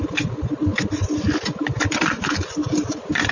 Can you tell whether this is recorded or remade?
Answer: recorded